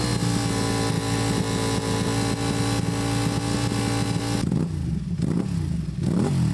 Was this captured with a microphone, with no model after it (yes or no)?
yes